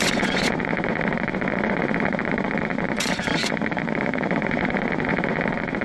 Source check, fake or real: fake